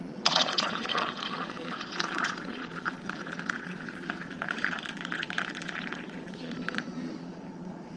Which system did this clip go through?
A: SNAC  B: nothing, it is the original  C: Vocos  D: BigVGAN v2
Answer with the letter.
C